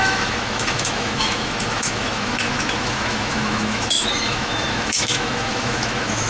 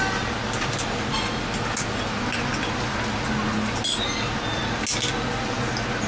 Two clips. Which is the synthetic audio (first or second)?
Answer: first